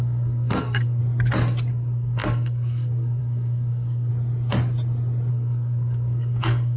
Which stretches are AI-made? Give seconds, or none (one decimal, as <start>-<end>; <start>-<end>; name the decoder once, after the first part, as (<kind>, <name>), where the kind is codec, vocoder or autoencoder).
0.0-1.0 (codec, SNAC); 1.7-4.1; 5.3-6.8